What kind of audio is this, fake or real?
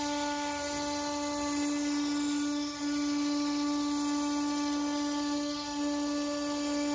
real